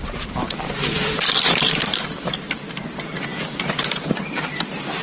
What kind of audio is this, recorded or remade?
remade